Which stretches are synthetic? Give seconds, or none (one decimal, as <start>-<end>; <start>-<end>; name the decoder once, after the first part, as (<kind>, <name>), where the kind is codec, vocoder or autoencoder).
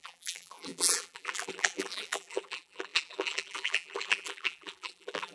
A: 0.0-5.3 (vocoder, BigVGAN v2)